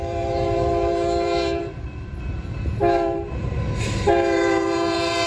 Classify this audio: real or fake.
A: fake